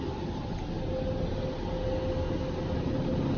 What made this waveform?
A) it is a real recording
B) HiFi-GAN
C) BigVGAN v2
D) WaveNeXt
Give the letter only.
A